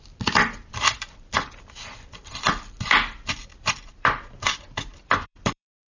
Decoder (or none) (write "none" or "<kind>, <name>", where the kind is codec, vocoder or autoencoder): vocoder, BigVGAN v2